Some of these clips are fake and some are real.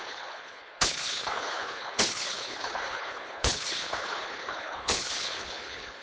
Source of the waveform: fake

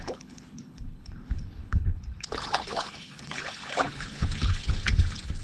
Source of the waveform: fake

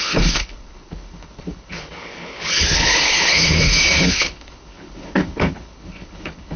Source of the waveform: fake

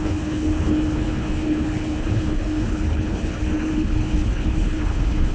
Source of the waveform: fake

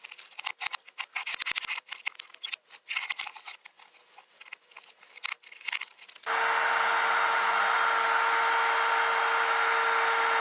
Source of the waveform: real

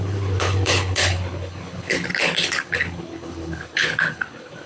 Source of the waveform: fake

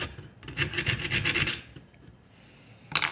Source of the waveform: real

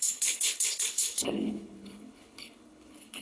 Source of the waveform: fake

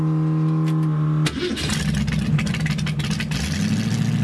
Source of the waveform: real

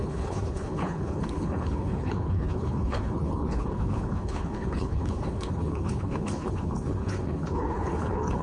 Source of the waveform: fake